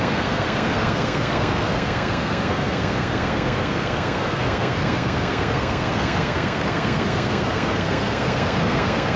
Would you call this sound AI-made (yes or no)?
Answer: yes